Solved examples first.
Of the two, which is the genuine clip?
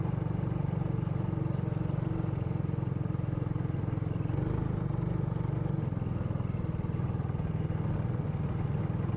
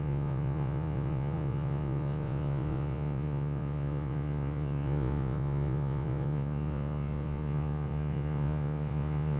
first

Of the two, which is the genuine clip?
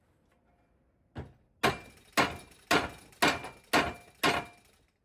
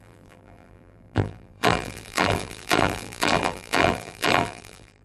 first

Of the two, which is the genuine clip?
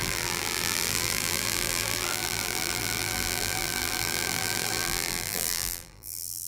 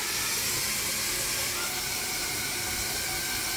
second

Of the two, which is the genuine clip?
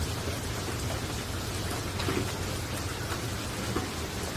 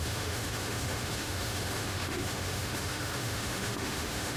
first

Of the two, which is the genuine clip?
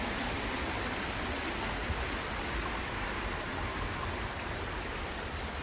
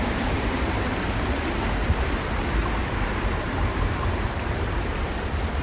first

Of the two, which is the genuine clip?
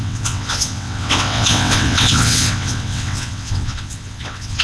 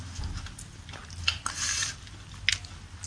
second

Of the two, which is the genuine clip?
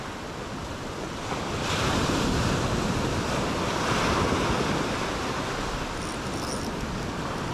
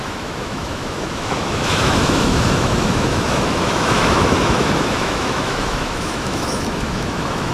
first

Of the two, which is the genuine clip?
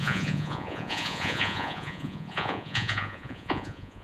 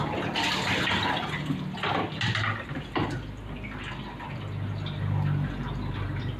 second